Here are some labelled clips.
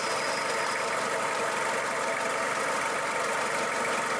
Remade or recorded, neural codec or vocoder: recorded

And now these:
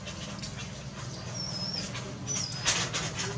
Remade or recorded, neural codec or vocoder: recorded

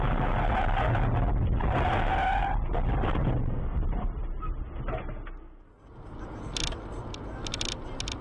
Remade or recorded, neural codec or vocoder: recorded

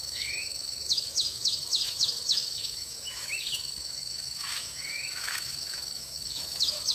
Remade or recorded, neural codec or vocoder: remade, autoencoder, DAC-VAE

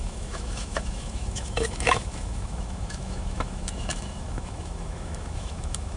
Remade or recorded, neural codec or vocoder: remade, autoencoder, DAC-VAE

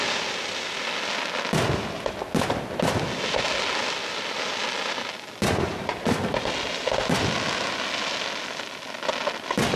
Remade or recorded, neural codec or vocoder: recorded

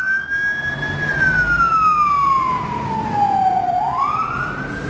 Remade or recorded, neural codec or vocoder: recorded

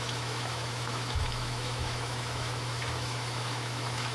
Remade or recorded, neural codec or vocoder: remade, autoencoder, DAC-VAE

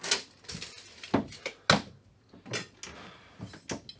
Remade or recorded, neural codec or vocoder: recorded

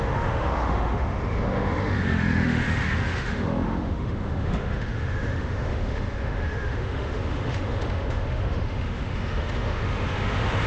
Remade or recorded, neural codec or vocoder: remade, autoencoder, DAC-VAE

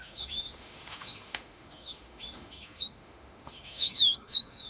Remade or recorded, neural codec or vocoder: remade, autoencoder, DAC-VAE